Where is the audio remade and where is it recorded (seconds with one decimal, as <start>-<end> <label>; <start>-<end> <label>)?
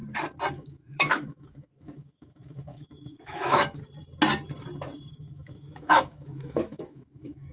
0.0-0.5 recorded; 0.5-3.8 remade; 3.8-5.1 recorded; 5.1-7.5 remade